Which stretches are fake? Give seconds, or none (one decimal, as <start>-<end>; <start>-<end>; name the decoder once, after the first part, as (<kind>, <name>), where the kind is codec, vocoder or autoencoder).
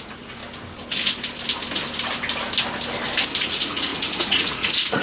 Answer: 0.0-0.4 (vocoder, Vocos); 3.4-5.0